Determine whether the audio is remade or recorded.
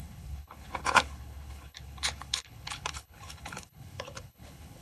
remade